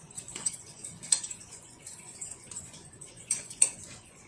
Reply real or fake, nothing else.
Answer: fake